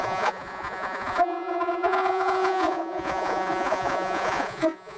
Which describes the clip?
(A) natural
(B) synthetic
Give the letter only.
B